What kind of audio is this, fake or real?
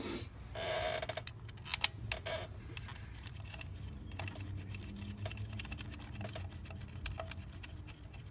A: real